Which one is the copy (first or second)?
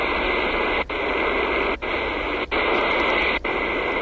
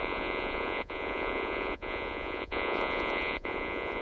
second